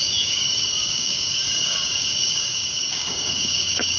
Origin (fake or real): fake